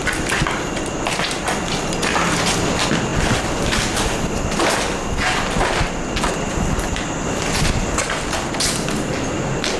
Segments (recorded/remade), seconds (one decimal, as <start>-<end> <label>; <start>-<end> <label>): 0.0-9.8 recorded